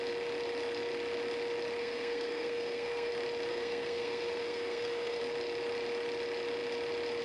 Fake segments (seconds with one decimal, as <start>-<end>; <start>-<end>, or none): 1.8-3.1; 3.5-5.2